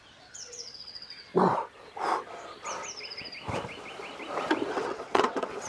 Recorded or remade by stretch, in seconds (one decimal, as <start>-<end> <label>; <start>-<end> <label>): 0.0-1.3 remade; 1.3-4.7 recorded; 4.7-5.7 remade